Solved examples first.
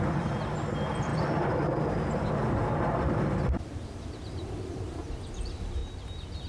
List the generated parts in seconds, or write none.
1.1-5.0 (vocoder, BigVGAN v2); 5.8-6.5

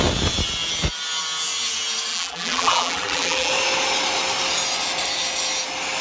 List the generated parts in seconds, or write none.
2.1-3.5 (vocoder, BigVGAN v2)

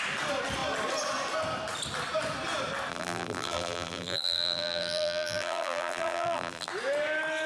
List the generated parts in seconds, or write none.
2.9-6.7 (vocoder, BigVGAN v2)

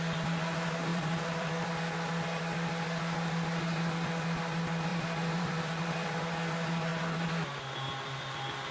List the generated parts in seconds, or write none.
0.9-1.7 (vocoder, BigVGAN v2); 4.9-6.2